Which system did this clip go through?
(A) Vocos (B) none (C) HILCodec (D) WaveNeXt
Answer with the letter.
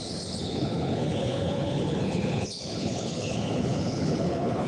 C